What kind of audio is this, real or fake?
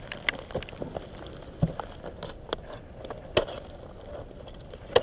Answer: real